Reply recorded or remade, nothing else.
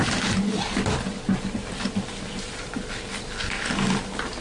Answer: recorded